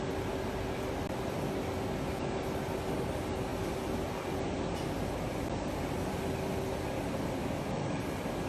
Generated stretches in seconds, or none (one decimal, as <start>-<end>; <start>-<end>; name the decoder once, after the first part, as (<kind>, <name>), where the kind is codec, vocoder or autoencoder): 7.4-8.0 (autoencoder, DAC-VAE)